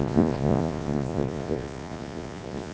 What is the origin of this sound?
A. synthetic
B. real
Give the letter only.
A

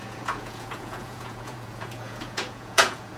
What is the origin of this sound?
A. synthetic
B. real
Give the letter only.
A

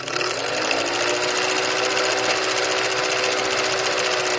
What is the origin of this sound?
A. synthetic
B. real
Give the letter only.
B